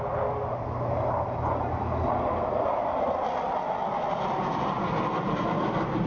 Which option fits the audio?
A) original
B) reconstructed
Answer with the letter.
A